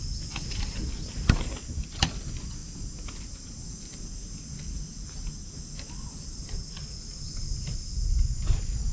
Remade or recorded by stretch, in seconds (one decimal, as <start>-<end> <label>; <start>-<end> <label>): 0.0-8.9 recorded